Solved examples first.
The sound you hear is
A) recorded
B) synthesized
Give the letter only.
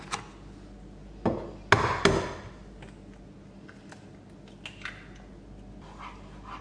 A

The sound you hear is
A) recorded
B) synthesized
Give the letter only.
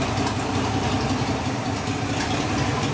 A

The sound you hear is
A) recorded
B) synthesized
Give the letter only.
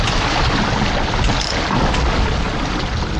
A